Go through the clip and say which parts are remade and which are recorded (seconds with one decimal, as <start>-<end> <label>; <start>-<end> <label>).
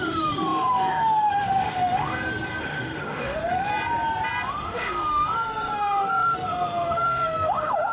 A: 0.0-2.1 remade; 2.1-2.6 recorded; 2.6-3.7 remade; 3.7-4.5 recorded; 4.5-7.9 remade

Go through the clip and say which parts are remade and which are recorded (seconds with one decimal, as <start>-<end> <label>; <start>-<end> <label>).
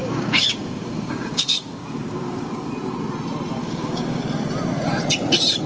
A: 0.0-2.7 remade; 2.7-3.6 recorded; 3.6-4.2 remade; 4.2-5.7 recorded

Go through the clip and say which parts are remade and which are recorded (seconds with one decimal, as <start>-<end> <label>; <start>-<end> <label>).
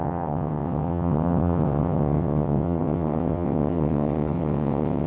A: 0.0-5.1 remade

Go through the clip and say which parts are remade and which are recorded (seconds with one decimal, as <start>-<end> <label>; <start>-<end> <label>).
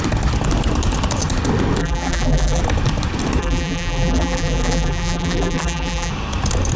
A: 0.0-1.8 recorded; 1.8-2.6 remade; 2.6-3.4 recorded; 3.4-6.1 remade; 6.1-6.8 recorded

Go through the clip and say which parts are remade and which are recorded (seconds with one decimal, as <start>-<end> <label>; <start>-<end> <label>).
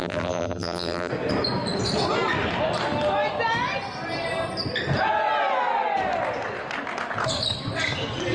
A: 0.0-1.1 remade; 1.1-8.3 recorded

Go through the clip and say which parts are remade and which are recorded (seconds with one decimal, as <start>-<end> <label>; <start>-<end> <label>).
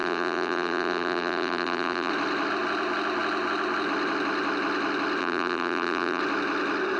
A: 0.0-2.1 remade; 2.1-5.2 recorded; 5.2-6.2 remade; 6.2-7.0 recorded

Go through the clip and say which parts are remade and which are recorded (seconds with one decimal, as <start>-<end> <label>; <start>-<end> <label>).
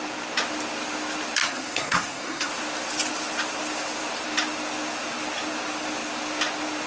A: 0.0-1.4 recorded; 1.4-2.5 remade; 2.5-6.9 recorded